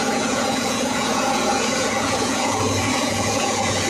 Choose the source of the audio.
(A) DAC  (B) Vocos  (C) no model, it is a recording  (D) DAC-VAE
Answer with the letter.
B